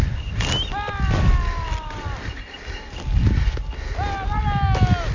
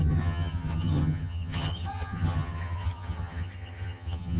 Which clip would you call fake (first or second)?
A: second